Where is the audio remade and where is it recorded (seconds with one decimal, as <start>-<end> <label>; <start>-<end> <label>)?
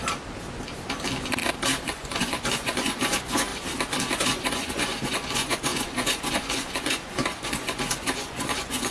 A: 0.0-1.9 recorded; 1.9-3.5 remade; 3.5-4.2 recorded; 4.2-8.9 remade